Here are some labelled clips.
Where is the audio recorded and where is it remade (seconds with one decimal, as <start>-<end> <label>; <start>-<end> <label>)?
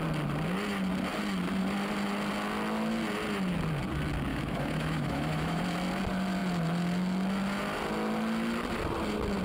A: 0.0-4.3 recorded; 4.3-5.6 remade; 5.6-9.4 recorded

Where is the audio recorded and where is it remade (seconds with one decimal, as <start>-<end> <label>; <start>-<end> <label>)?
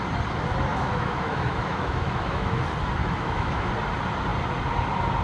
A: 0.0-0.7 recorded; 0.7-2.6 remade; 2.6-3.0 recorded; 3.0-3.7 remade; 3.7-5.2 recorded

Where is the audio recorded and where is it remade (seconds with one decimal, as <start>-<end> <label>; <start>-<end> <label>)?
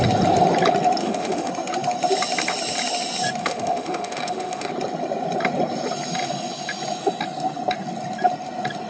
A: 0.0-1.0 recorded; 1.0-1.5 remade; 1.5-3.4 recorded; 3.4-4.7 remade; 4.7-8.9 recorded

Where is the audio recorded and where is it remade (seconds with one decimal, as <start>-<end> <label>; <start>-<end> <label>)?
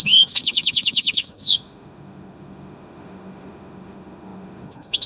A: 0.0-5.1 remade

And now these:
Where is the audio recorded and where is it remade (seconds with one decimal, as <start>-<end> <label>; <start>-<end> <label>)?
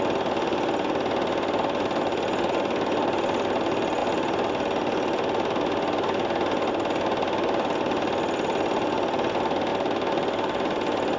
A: 0.0-11.2 recorded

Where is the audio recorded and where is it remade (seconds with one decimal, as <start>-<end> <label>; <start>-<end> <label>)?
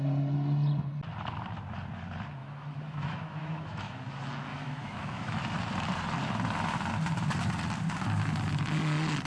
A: 0.0-2.4 recorded; 2.4-4.1 remade; 4.1-4.5 recorded; 4.5-5.4 remade; 5.4-9.3 recorded